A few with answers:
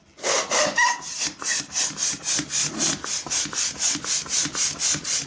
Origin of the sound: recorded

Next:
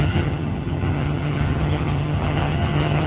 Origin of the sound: remade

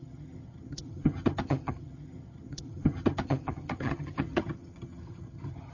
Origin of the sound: remade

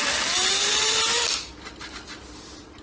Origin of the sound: recorded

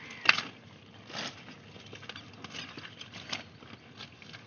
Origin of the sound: recorded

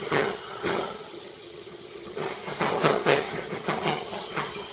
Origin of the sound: remade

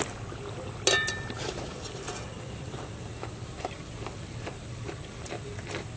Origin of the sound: recorded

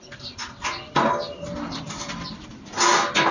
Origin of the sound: recorded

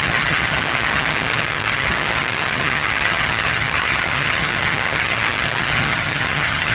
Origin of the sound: remade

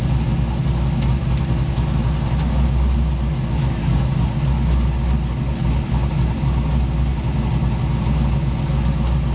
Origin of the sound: recorded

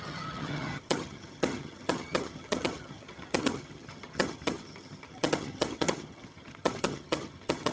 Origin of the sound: remade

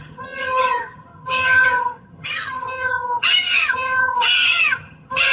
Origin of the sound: remade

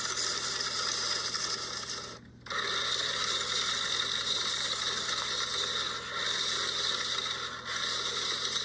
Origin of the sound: recorded